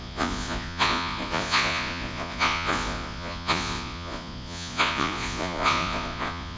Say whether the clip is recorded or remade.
remade